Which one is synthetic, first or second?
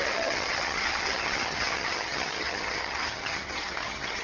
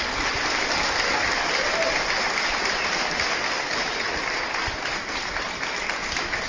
first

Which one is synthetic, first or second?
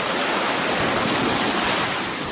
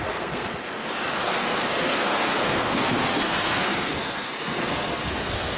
second